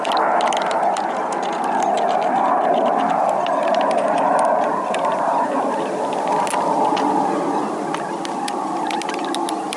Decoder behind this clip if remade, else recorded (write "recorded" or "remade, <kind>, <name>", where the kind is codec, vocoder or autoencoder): recorded